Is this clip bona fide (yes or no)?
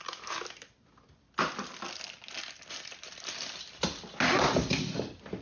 yes